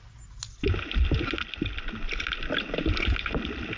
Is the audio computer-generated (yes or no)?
no